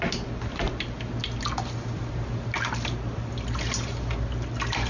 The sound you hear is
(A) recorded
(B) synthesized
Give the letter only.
A